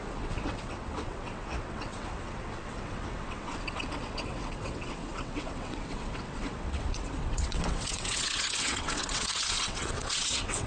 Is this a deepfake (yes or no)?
yes